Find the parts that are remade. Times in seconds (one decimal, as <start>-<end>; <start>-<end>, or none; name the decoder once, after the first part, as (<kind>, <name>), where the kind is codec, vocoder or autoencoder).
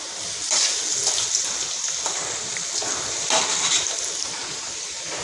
1.0-4.0 (vocoder, BigVGAN v2)